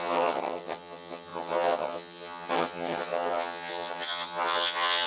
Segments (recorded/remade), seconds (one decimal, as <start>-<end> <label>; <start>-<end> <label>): 0.0-5.1 remade